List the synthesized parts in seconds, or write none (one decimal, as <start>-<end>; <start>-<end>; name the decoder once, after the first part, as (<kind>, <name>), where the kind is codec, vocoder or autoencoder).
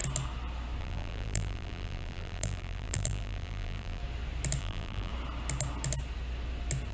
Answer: 0.8-4.0 (vocoder, BigVGAN v2); 4.6-5.1